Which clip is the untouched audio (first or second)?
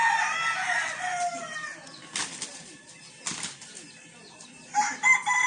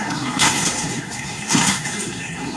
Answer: first